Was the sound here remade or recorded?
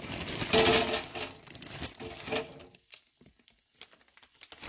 recorded